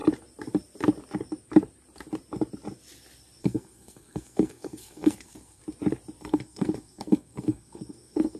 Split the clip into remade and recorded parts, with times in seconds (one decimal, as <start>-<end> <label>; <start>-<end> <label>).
0.0-3.4 recorded; 3.4-5.6 remade; 5.6-6.2 recorded; 6.2-8.4 remade